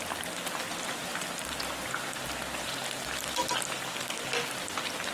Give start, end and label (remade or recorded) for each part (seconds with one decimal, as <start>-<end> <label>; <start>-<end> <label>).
0.0-5.1 recorded